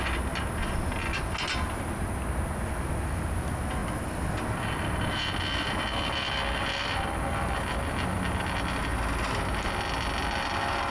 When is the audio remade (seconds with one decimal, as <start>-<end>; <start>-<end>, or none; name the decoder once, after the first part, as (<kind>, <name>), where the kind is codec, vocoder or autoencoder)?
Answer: none